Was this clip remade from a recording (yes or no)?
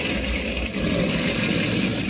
no